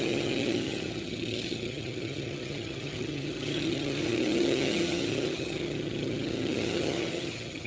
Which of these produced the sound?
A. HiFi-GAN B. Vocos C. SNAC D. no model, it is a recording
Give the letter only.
A